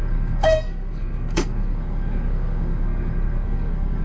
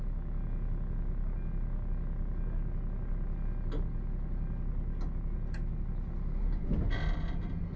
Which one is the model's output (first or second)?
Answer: first